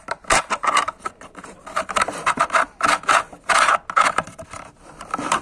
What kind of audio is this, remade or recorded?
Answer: recorded